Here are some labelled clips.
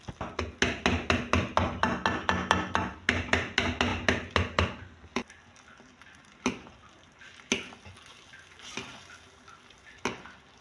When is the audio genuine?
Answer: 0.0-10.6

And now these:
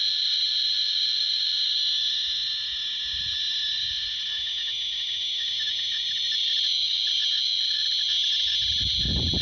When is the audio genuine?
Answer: 0.0-4.3; 5.9-9.4

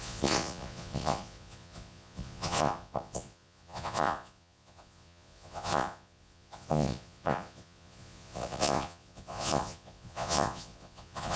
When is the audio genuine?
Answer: none

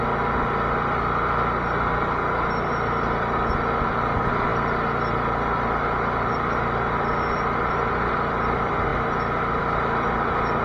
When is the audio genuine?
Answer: 0.0-10.6

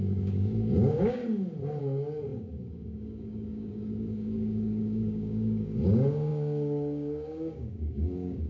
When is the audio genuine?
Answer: 1.2-1.8